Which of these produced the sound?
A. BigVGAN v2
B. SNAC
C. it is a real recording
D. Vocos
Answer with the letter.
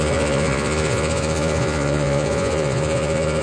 D